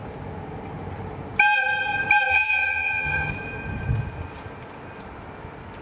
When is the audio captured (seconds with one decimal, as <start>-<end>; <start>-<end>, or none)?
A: 0.0-2.3; 3.3-5.8